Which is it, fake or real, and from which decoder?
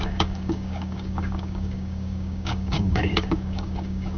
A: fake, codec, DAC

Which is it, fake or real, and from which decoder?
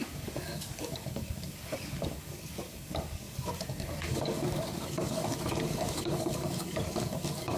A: fake, codec, DAC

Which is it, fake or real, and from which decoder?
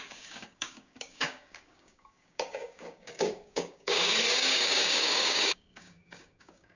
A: fake, codec, DAC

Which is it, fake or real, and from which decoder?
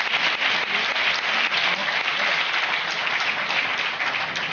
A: real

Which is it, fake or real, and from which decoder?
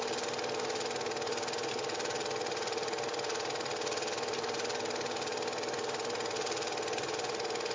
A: real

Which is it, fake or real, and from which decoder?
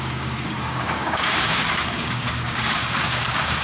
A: fake, codec, DAC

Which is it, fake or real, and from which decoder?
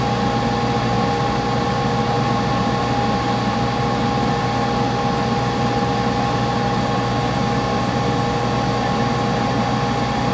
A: real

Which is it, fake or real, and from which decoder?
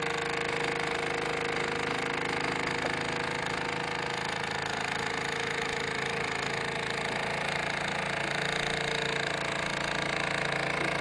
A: real